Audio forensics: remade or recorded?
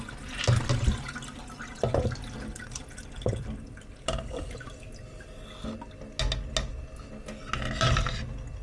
recorded